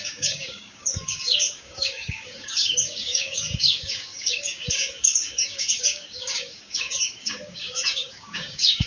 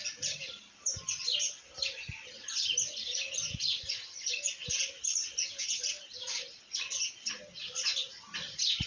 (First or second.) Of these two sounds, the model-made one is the first